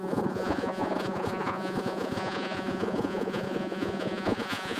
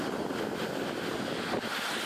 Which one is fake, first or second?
first